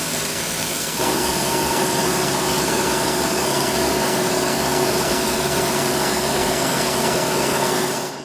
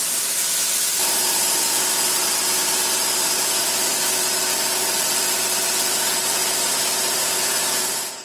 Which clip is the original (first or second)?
second